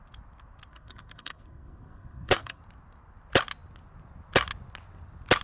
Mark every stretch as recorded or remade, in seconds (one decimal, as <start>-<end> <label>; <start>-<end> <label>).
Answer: 0.0-0.7 recorded; 0.7-2.6 remade; 2.6-5.4 recorded